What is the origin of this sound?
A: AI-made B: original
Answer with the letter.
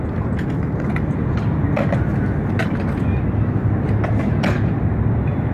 B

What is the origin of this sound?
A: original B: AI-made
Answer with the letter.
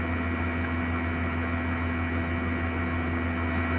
A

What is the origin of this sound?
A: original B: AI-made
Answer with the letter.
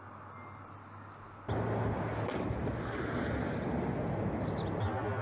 A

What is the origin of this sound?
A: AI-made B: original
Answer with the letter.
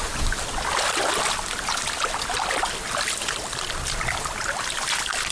B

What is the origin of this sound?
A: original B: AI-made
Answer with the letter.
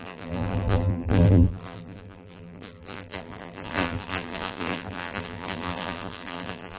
B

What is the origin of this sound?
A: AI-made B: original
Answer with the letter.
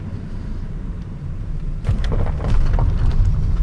A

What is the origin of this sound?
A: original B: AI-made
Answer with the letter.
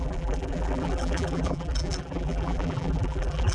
B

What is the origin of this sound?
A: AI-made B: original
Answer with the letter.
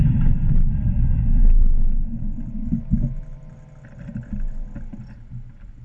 B